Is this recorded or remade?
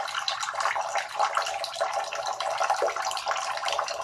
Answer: recorded